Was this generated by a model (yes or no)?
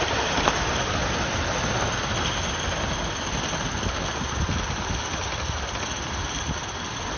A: no